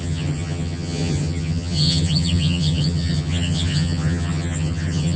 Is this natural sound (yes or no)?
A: no